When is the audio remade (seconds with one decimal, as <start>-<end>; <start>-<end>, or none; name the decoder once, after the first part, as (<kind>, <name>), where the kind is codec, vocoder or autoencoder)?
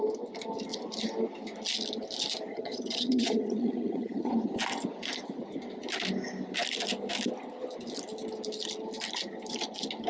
2.5-4.3 (vocoder, HiFi-GAN)